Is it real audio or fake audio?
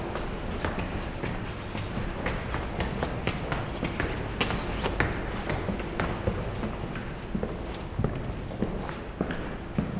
real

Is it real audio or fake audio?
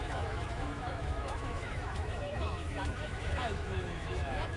fake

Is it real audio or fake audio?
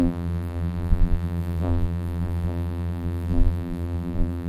fake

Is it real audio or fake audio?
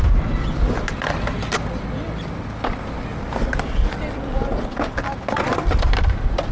real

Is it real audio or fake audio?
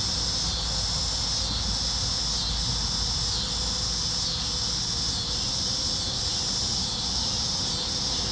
real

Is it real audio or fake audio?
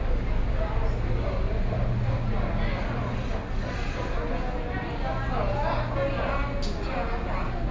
real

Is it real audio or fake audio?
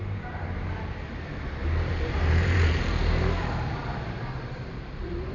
fake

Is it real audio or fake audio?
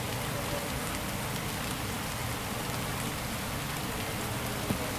real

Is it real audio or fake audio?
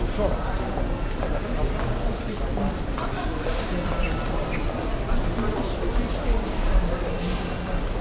real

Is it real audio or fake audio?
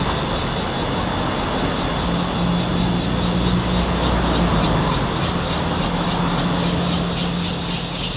real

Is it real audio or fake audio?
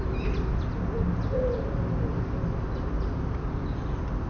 real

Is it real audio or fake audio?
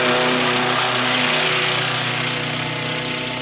real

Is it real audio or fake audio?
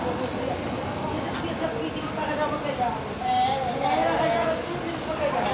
real